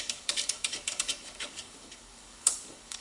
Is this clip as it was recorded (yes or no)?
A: no